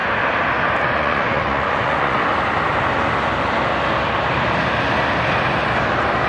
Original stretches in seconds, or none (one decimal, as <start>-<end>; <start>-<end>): 0.0-0.8; 2.2-6.3